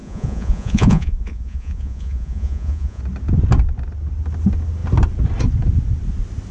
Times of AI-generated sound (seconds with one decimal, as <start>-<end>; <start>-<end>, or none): 0.0-3.0

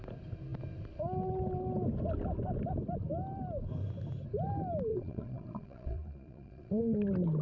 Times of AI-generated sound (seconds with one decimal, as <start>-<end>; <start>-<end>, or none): 4.9-6.8